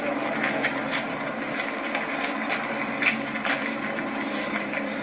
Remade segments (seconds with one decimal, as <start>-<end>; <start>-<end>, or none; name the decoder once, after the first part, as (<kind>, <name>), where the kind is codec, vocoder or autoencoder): 0.0-0.9 (vocoder, BigVGAN v2); 2.5-5.0